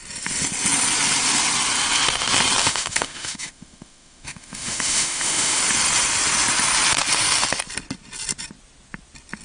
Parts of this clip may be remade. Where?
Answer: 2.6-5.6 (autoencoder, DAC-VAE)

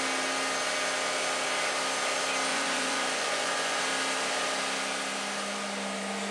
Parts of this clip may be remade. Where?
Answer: 2.5-3.8 (vocoder, Vocos)

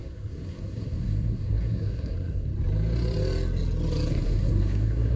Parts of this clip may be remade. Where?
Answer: 0.0-2.5 (codec, SNAC); 4.1-5.2

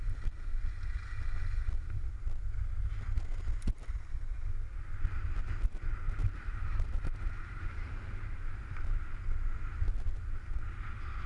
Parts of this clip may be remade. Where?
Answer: 6.2-9.2 (vocoder, BigVGAN v2)

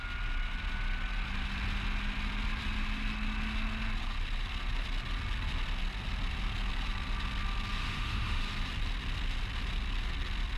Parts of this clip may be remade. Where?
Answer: 7.8-8.4 (autoencoder, DAC-VAE)

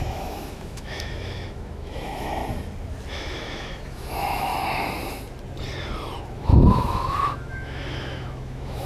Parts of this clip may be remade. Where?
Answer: 0.0-2.4 (autoencoder, DAC-VAE); 3.1-4.5; 6.2-8.9

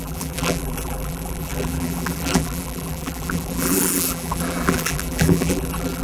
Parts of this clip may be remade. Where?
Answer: 0.0-6.0 (vocoder, BigVGAN v2)

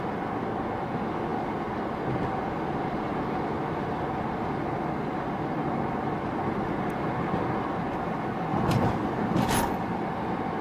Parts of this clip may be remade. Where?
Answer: 8.5-9.5 (vocoder, BigVGAN v2)